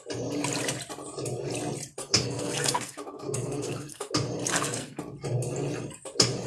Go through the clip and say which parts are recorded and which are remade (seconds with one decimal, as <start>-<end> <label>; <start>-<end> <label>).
0.0-2.0 recorded; 2.0-4.1 remade; 4.1-4.5 recorded; 4.5-5.0 remade; 5.0-6.5 recorded